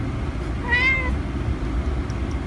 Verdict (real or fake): real